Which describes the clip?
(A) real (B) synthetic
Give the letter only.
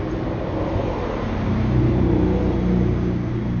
A